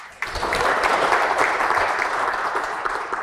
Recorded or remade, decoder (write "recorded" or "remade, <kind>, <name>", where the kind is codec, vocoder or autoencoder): remade, vocoder, BigVGAN v2